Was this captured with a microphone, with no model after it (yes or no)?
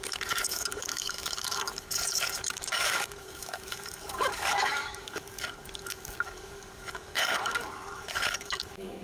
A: no